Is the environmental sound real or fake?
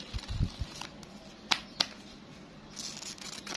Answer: real